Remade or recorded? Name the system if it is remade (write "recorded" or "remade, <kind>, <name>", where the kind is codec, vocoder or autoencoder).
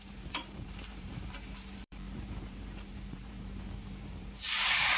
remade, vocoder, BigVGAN v2